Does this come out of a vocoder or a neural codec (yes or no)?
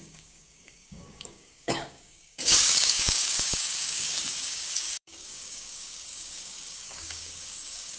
yes